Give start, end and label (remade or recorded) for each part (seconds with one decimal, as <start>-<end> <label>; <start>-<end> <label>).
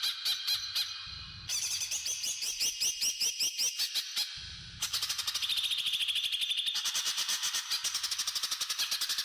0.0-1.5 recorded; 1.5-2.5 remade; 2.5-9.2 recorded